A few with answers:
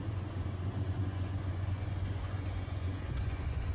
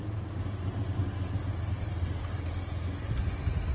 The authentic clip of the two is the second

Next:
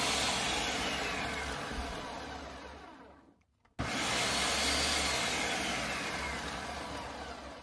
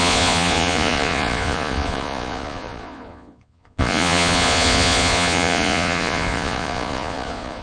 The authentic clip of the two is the first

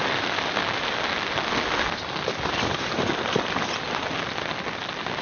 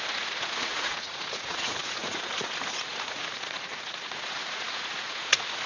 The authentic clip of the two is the first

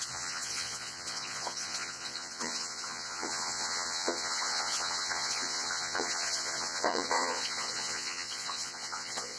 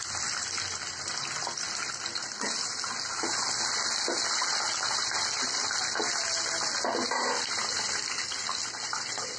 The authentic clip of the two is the second